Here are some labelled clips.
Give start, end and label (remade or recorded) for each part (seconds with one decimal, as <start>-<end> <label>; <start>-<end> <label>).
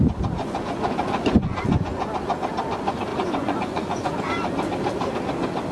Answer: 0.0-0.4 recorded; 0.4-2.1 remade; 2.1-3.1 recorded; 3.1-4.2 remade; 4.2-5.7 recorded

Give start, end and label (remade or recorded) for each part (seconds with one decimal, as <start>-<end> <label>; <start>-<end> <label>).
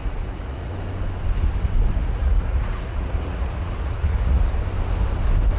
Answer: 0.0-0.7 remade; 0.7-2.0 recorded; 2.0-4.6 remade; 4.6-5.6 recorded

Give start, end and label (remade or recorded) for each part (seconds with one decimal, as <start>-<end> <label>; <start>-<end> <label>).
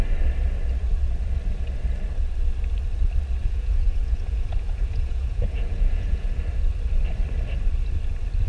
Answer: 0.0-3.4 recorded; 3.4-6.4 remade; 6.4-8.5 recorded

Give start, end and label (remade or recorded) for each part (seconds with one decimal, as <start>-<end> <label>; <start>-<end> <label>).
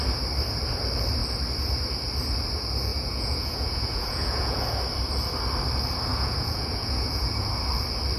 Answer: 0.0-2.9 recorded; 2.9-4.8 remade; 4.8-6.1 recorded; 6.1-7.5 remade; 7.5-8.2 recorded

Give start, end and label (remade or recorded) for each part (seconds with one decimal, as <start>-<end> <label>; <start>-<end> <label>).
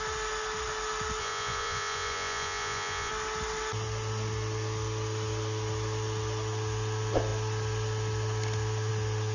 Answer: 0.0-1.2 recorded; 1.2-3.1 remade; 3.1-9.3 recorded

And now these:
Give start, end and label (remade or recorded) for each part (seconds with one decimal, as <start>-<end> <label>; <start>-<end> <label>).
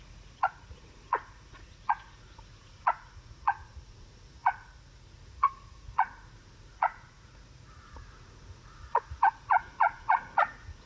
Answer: 0.0-10.9 remade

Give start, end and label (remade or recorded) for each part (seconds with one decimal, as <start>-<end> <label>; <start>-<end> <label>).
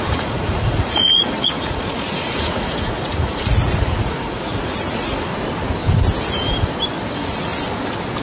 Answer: 0.0-5.3 remade; 5.3-7.1 recorded; 7.1-7.5 remade; 7.5-8.2 recorded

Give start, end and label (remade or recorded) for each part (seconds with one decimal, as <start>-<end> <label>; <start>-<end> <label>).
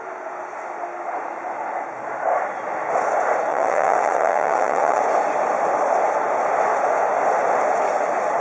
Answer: 0.0-3.5 recorded; 3.5-5.0 remade; 5.0-8.4 recorded